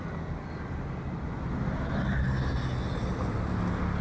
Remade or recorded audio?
recorded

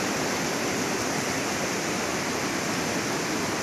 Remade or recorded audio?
recorded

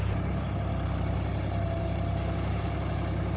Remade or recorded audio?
recorded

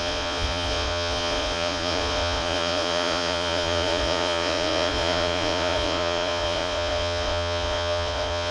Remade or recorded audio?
remade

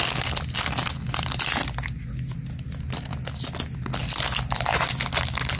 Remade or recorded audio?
recorded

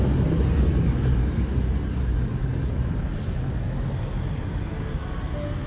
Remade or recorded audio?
recorded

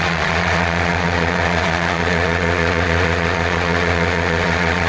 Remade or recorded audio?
remade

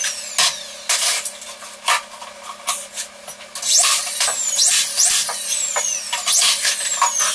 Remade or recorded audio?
recorded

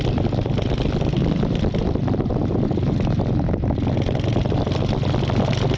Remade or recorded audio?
recorded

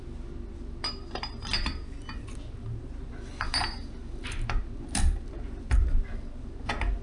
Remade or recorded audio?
recorded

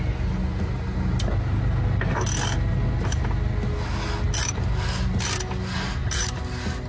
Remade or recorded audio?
recorded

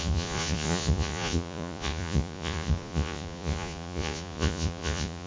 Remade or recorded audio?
remade